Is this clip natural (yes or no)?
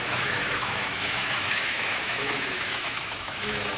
no